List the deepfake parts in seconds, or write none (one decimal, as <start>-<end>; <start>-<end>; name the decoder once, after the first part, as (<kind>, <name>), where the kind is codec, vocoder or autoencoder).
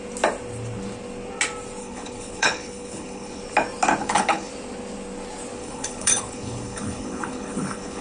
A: 1.8-3.4 (codec, HILCodec); 4.0-4.5; 5.6-8.0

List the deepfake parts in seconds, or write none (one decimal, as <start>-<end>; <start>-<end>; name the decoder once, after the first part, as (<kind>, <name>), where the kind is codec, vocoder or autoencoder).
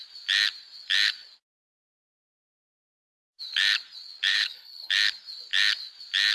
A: 4.3-4.9 (codec, HILCodec)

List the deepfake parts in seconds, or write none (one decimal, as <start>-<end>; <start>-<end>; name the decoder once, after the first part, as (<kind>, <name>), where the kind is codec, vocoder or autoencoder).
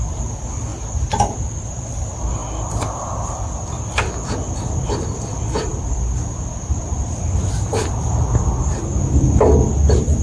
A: none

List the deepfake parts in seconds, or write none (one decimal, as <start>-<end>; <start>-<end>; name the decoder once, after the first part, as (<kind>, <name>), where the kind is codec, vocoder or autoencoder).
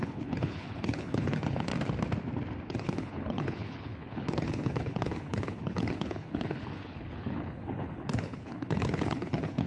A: 0.0-1.7 (codec, HILCodec); 2.7-9.7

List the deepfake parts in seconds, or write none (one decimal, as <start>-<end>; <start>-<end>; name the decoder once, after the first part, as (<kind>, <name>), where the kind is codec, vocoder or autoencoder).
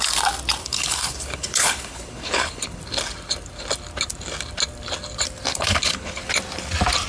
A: 0.6-2.8 (codec, HILCodec); 5.5-6.3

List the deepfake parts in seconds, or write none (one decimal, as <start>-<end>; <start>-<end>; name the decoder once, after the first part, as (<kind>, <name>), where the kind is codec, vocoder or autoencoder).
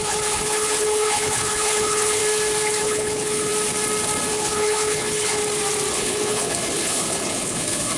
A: 0.0-2.2 (codec, HILCodec); 2.8-3.5; 4.3-5.4; 5.9-8.0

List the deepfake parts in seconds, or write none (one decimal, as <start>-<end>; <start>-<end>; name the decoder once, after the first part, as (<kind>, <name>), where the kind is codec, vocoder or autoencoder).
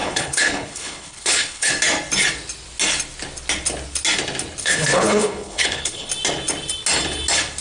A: 0.0-1.7 (codec, HILCodec); 4.6-6.1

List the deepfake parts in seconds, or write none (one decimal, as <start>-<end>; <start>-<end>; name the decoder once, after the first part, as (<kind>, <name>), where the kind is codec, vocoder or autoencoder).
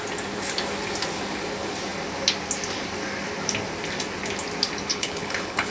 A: 4.9-5.7 (codec, HILCodec)